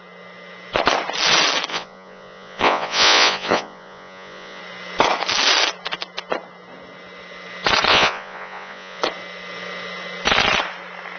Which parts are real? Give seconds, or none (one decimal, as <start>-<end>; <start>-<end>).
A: 0.0-1.7; 4.6-7.9; 9.0-11.2